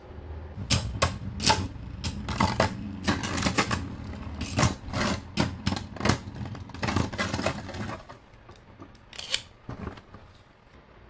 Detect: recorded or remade recorded